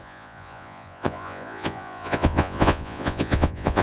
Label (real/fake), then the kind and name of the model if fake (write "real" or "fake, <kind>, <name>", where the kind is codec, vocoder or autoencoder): fake, vocoder, Vocos